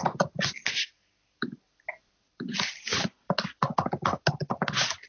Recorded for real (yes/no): yes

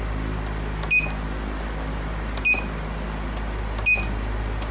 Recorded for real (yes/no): yes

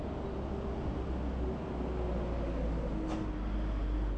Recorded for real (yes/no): yes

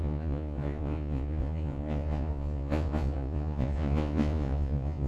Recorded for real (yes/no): no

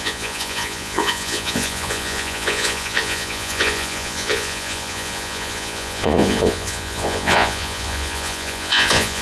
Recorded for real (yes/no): no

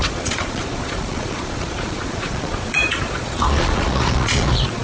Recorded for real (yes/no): no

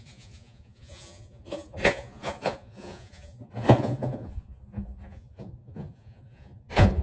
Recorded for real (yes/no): no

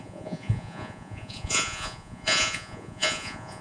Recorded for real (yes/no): no